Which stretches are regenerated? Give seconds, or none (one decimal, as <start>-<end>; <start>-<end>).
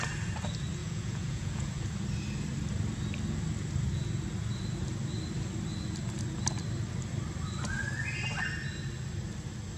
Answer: 0.8-1.9